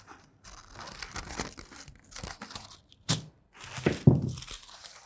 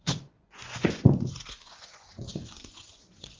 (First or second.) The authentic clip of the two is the first